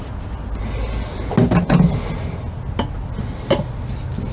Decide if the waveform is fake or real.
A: real